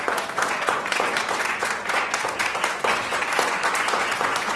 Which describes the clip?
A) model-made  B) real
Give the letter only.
A